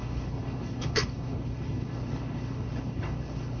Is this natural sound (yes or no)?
no